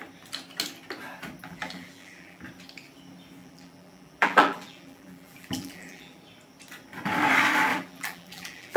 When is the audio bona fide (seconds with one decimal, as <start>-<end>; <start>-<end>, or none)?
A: 0.0-1.4; 2.4-3.4; 6.2-7.7